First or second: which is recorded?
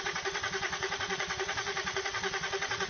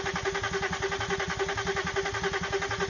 second